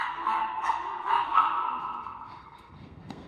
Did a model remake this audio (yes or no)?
yes